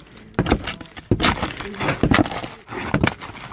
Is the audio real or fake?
real